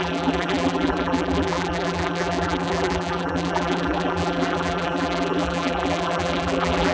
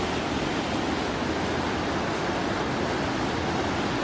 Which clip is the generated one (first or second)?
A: first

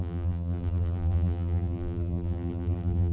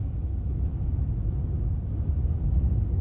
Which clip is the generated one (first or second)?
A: first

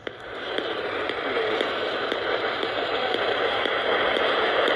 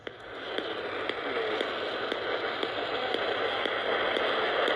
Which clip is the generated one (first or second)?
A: first